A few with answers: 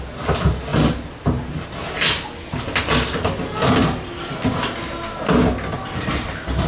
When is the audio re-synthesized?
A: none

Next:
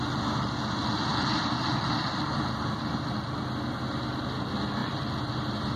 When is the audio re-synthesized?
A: 1.1-3.4 (vocoder, BigVGAN v2); 4.8-5.8

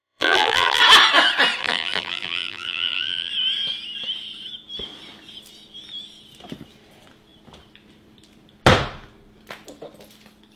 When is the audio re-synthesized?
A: 0.0-0.8 (vocoder, BigVGAN v2); 1.6-3.3

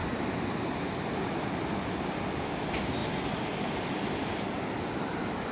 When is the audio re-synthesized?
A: none